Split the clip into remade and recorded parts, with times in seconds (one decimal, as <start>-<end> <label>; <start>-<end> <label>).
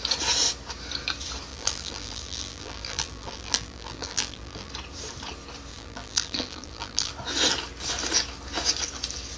0.0-1.5 recorded; 1.5-4.7 remade; 4.7-5.7 recorded; 5.7-7.1 remade; 7.1-9.4 recorded